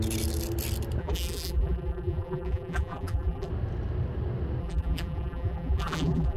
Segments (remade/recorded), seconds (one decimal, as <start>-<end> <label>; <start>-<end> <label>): 0.0-1.0 recorded; 1.0-3.5 remade; 3.5-4.6 recorded; 4.6-6.4 remade

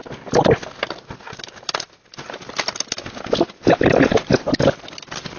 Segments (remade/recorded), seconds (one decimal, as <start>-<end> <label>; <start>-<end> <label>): 0.0-5.4 recorded

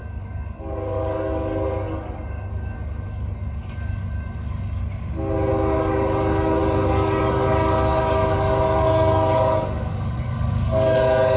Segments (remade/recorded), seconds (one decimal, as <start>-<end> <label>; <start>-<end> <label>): 0.0-4.8 remade; 4.8-5.5 recorded; 5.5-11.4 remade

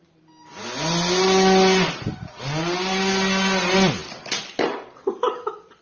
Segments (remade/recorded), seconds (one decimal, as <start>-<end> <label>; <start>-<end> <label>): 0.0-5.8 recorded